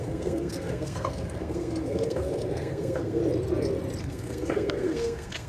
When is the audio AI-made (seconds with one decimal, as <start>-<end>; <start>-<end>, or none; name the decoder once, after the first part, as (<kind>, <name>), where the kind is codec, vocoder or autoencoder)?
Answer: 0.0-3.2 (codec, SNAC); 4.0-5.5